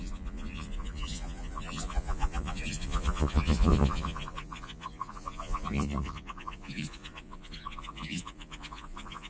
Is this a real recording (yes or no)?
no